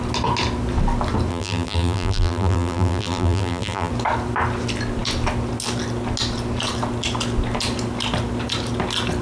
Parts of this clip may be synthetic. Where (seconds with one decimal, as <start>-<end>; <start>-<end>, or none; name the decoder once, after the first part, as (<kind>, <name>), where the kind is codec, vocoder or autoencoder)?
1.3-3.9 (vocoder, BigVGAN v2)